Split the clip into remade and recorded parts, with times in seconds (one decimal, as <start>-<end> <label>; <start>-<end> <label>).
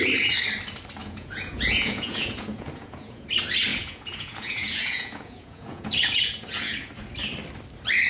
0.0-1.0 recorded; 1.0-3.3 remade; 3.3-3.7 recorded; 3.7-6.9 remade; 6.9-8.1 recorded